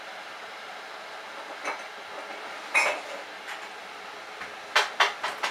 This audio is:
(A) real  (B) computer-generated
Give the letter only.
A